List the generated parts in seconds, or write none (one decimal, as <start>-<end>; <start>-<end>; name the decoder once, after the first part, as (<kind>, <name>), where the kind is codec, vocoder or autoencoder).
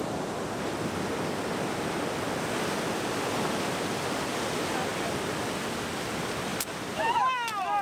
none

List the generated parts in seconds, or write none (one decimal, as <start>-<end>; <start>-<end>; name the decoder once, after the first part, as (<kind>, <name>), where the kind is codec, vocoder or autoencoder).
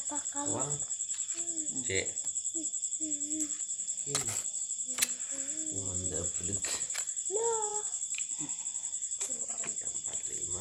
7.7-8.6 (vocoder, BigVGAN v2)